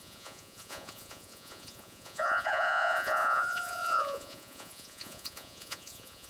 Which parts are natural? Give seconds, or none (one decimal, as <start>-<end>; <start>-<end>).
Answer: none